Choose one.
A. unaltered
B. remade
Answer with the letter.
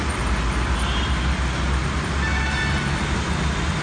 A